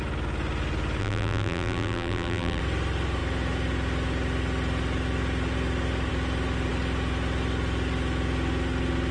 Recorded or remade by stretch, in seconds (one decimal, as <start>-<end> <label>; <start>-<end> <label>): 0.0-1.0 recorded; 1.0-2.6 remade; 2.6-9.1 recorded